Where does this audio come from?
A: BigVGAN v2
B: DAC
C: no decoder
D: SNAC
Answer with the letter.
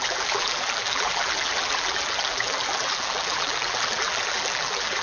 A